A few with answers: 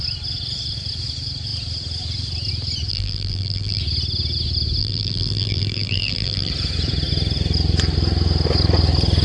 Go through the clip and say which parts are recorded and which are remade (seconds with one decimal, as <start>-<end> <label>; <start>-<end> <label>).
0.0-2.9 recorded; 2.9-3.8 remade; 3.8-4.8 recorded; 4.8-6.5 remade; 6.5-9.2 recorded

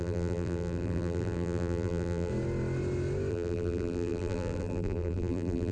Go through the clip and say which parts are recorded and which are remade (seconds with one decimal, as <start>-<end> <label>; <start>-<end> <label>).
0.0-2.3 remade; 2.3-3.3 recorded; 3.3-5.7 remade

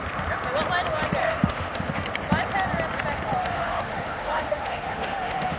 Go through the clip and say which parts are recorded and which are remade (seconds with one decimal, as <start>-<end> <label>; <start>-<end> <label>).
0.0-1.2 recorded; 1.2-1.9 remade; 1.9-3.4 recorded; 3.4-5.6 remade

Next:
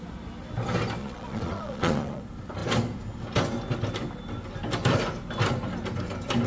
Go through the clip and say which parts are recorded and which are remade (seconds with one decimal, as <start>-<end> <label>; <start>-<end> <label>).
0.0-1.0 recorded; 1.0-2.2 remade; 2.2-6.5 recorded

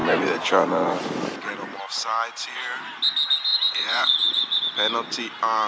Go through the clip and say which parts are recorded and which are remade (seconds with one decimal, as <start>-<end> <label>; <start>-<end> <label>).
0.0-1.1 remade; 1.1-3.5 recorded; 3.5-4.6 remade; 4.6-5.7 recorded

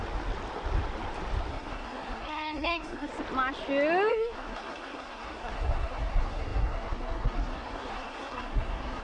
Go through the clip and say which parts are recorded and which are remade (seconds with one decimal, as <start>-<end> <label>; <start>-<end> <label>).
0.0-1.5 recorded; 1.5-3.1 remade; 3.1-4.1 recorded; 4.1-9.0 remade